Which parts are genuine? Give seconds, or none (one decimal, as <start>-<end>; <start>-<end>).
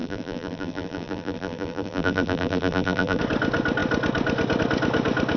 3.2-5.4